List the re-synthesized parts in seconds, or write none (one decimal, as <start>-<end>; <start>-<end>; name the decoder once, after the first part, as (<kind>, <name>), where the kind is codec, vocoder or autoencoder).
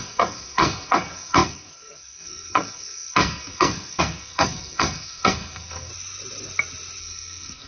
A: 0.0-5.9 (codec, SNAC); 7.0-7.7